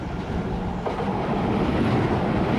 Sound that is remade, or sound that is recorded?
remade